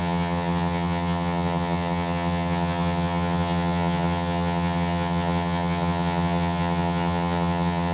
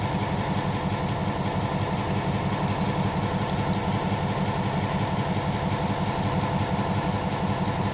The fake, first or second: first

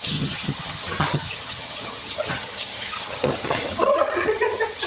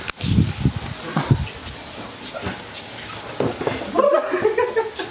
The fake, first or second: first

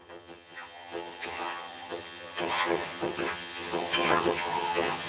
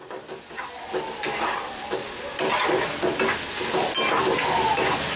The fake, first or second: first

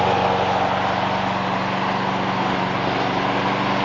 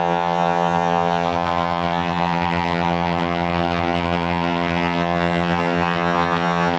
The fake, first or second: second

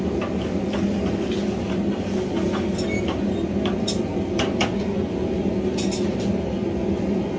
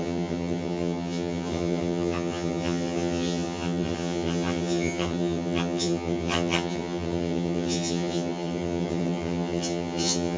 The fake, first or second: second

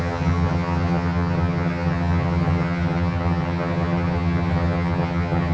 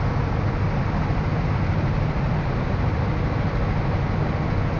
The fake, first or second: first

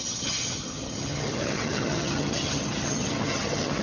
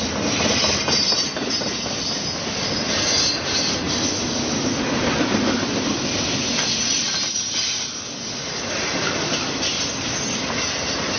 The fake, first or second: first